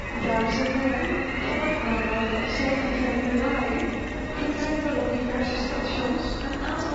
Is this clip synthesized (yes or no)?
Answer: no